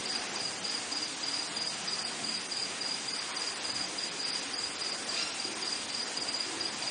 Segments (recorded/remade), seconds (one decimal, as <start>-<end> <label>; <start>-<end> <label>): 0.0-0.6 remade; 0.6-6.9 recorded